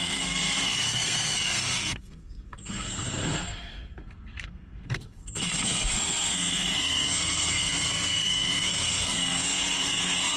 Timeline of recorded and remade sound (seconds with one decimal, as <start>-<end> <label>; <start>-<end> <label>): 0.0-10.4 remade